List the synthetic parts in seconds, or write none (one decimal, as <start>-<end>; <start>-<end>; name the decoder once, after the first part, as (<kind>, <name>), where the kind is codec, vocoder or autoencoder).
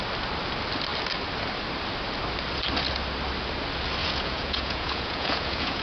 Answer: 4.0-5.8 (vocoder, Vocos)